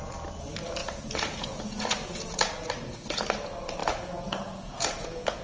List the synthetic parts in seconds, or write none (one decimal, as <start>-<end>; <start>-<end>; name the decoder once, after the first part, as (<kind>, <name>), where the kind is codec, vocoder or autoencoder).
0.8-2.7 (vocoder, Vocos); 3.8-5.4